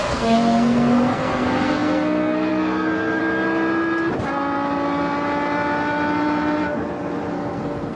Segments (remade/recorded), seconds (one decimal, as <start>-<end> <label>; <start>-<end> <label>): 0.0-3.2 remade; 3.2-7.3 recorded; 7.3-8.0 remade